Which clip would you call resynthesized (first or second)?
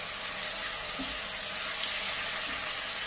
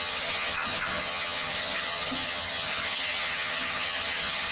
second